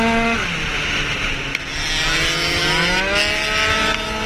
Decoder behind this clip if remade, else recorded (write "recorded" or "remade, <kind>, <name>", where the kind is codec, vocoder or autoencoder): recorded